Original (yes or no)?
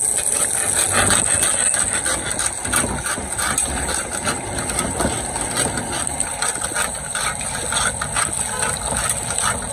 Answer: yes